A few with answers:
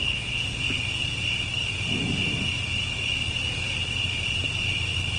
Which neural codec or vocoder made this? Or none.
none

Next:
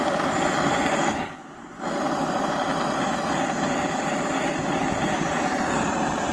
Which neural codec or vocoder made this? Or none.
vocoder, BigVGAN v2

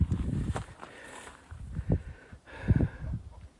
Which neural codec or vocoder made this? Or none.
vocoder, BigVGAN v2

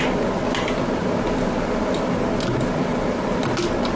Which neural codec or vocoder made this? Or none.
none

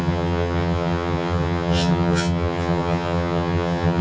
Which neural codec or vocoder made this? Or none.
vocoder, HiFi-GAN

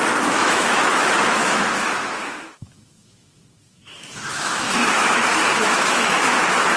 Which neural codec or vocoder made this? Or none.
autoencoder, DAC-VAE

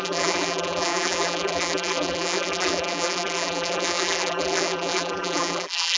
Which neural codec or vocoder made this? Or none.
vocoder, BigVGAN v2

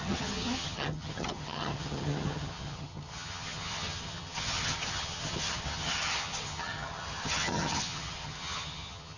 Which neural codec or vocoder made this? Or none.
vocoder, HiFi-GAN